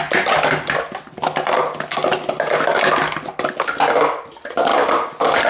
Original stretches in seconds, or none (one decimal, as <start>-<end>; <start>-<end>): 0.0-5.5